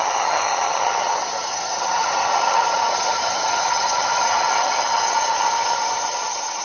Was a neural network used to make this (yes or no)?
yes